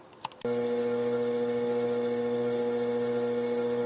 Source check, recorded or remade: recorded